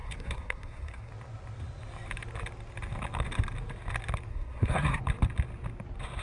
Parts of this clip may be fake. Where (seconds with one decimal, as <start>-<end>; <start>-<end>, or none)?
0.0-1.1; 4.3-5.0